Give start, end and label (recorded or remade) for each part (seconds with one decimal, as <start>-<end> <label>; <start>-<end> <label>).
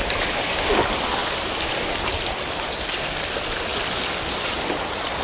0.0-5.2 recorded